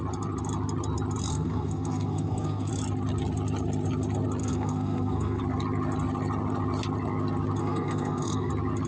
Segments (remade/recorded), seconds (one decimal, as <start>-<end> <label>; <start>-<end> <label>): 0.0-1.3 recorded; 1.3-2.7 remade; 2.7-4.4 recorded; 4.4-5.4 remade; 5.4-7.6 recorded; 7.6-8.5 remade; 8.5-8.9 recorded